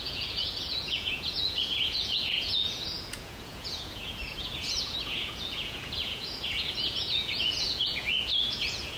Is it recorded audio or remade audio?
remade